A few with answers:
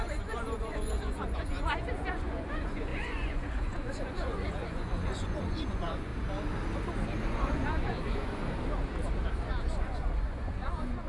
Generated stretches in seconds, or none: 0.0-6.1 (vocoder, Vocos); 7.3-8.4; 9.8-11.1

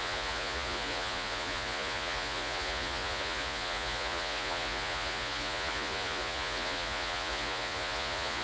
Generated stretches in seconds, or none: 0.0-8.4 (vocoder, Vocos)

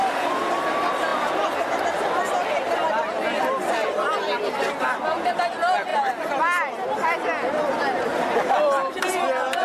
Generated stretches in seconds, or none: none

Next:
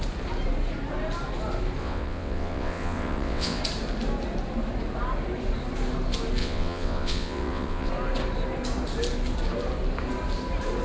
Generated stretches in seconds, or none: 1.8-3.6 (vocoder, WaveNeXt); 6.4-7.9

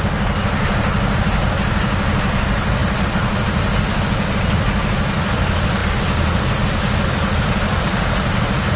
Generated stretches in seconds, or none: none

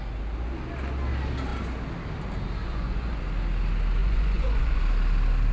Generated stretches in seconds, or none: 2.6-3.2 (vocoder, Vocos); 4.0-4.8